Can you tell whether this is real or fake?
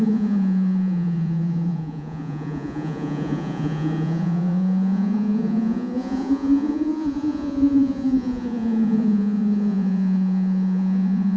fake